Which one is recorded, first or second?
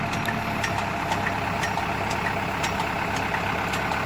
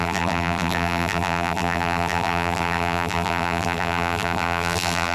first